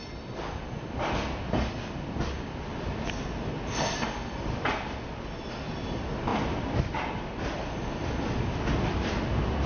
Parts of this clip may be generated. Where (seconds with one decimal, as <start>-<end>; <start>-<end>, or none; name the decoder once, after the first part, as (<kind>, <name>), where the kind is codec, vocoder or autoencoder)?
none